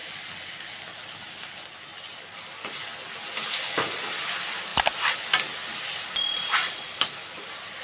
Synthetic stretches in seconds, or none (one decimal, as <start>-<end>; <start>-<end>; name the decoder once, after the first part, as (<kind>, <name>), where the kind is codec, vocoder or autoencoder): 1.9-2.4 (vocoder, BigVGAN v2); 4.7-5.2